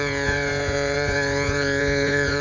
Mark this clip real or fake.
fake